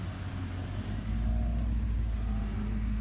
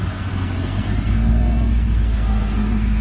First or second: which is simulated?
second